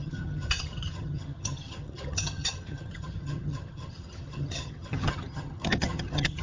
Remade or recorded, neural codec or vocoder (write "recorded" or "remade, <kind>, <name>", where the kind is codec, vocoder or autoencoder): remade, vocoder, HiFi-GAN